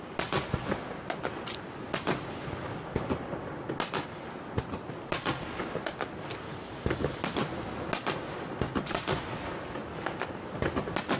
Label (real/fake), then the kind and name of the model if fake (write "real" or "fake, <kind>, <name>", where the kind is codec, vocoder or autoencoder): real